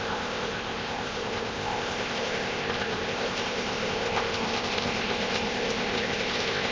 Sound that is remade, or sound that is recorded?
remade